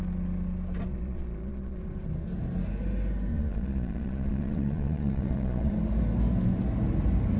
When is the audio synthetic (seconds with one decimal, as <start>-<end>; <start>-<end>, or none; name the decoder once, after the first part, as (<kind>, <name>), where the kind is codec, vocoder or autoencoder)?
0.9-1.8 (vocoder, Vocos); 3.3-5.7